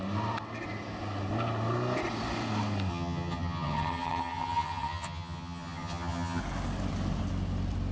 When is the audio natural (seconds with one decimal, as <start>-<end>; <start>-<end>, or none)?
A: 0.0-2.9; 6.4-7.9